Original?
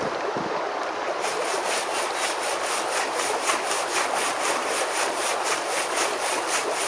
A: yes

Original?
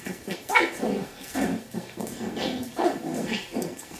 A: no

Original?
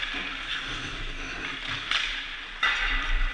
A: yes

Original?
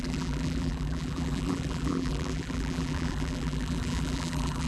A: no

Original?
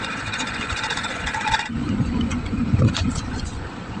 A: no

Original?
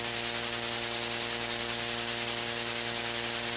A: yes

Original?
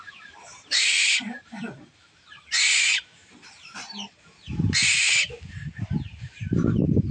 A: no